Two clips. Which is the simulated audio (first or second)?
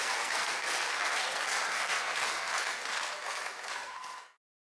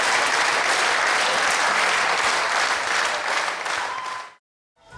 first